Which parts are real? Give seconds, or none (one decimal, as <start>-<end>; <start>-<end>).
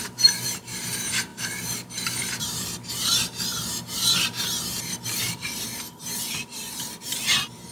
none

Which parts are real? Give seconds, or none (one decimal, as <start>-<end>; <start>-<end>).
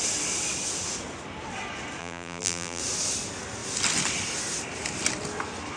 0.0-2.0; 2.8-5.8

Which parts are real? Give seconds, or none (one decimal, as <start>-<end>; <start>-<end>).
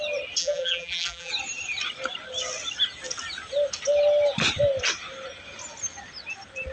0.0-0.4; 1.3-6.7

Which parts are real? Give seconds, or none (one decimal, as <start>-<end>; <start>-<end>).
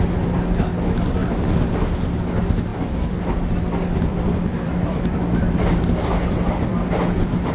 0.0-4.1; 5.9-6.7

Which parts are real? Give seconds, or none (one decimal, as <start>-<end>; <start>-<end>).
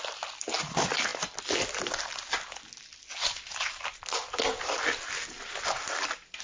0.0-6.4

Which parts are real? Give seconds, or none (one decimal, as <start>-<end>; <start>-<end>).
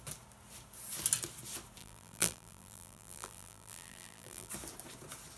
0.0-1.8; 4.5-5.4